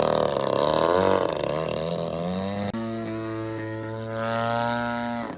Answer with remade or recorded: recorded